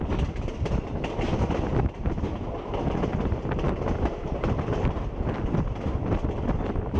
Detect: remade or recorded recorded